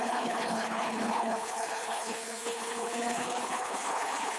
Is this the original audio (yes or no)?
no